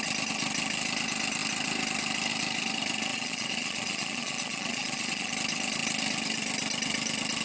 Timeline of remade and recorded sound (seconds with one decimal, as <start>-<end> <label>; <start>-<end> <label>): 0.0-3.1 recorded; 3.1-5.3 remade; 5.3-7.4 recorded